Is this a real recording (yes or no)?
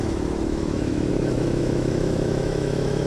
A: no